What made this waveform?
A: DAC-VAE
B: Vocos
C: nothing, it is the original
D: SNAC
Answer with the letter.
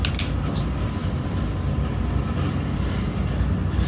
C